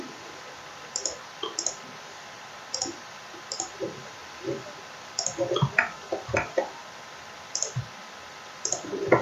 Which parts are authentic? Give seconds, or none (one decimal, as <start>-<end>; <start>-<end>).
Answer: 4.2-5.5